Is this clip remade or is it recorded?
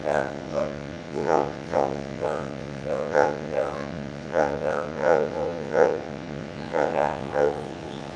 remade